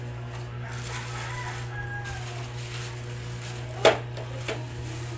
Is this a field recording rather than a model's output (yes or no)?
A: yes